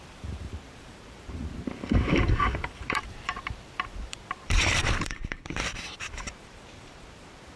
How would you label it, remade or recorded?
remade